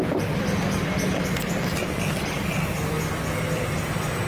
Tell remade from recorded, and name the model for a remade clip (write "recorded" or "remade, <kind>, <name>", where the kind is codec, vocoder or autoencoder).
recorded